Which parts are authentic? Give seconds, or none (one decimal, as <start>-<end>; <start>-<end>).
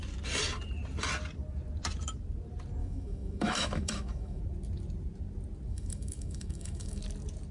0.0-2.8; 4.4-5.7; 7.0-7.5